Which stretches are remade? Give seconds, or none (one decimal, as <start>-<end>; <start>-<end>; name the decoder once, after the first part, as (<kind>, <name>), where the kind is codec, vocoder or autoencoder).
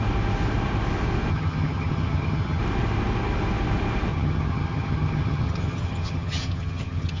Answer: 1.3-2.6 (vocoder, HiFi-GAN); 4.1-7.2